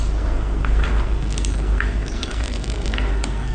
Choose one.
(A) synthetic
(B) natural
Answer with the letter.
A